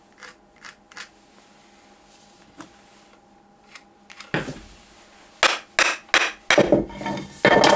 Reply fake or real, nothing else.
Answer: real